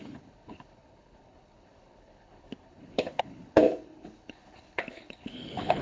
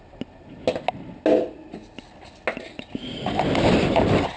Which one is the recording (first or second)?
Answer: second